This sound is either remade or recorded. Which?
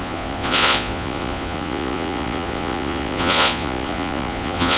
remade